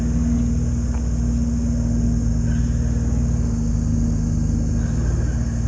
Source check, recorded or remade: recorded